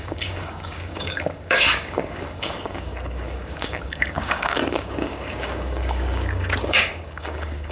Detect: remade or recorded remade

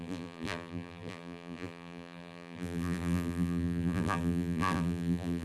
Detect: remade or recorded remade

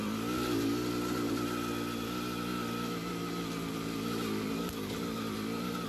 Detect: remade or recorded recorded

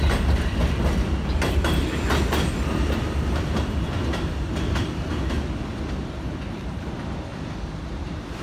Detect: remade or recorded recorded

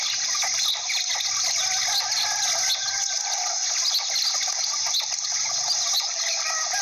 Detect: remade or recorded recorded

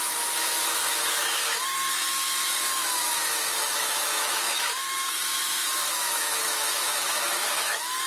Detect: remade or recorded remade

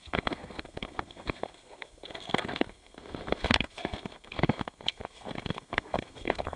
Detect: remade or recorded remade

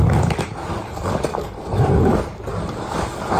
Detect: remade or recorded remade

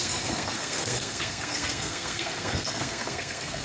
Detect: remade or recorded remade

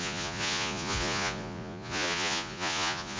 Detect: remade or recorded remade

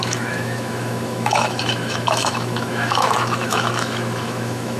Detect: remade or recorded remade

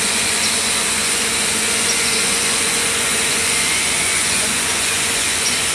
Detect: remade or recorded remade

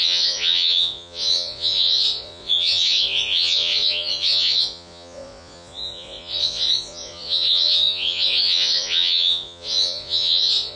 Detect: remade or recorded remade